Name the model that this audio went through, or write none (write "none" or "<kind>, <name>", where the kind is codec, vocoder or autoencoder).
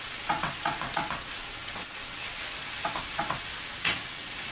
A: vocoder, WaveNeXt